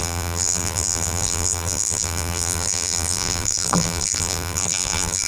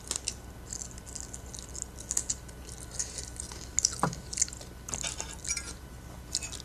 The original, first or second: second